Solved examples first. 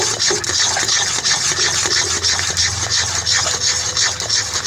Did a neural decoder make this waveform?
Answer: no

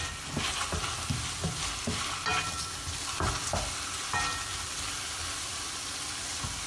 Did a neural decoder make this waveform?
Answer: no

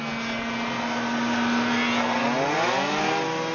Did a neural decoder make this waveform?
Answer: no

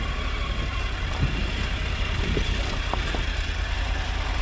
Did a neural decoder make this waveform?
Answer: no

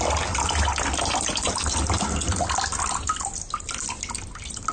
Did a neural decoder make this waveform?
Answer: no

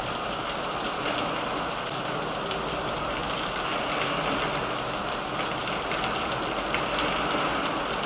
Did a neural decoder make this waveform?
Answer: no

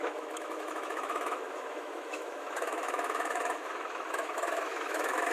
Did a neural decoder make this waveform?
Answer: yes